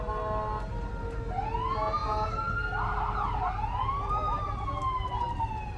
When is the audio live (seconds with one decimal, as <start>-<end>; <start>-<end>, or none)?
0.0-5.8